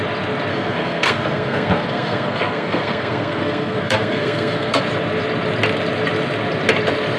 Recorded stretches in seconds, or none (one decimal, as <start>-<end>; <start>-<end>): 0.0-0.5; 4.8-7.2